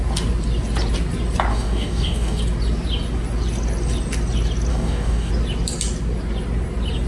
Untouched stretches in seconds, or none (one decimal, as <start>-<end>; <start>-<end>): 0.0-1.5; 2.4-4.7; 5.3-7.1